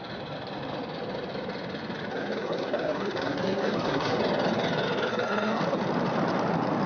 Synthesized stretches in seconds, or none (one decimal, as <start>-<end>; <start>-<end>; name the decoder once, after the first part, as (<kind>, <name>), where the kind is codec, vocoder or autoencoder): 2.1-4.2 (codec, SNAC); 5.1-5.6